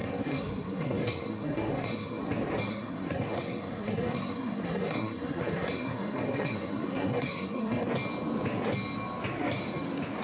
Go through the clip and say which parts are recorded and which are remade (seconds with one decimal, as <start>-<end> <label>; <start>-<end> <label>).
0.0-2.2 remade; 2.2-2.7 recorded; 2.7-7.9 remade; 7.9-10.2 recorded